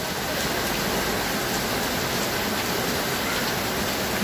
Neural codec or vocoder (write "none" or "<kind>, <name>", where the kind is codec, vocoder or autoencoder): none